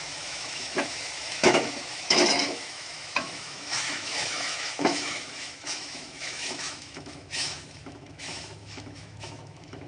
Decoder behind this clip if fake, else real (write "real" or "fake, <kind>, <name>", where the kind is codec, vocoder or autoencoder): fake, autoencoder, DAC-VAE